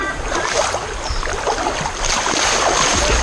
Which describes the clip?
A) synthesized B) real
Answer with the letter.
B